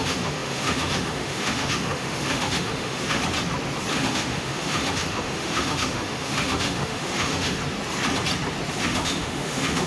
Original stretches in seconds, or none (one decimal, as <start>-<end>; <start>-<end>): 3.2-3.9; 7.6-8.8